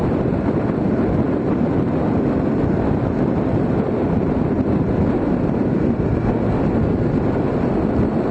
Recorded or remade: recorded